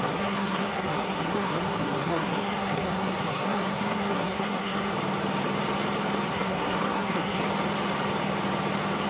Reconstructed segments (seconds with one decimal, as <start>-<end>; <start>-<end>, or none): 0.0-4.9; 6.3-7.4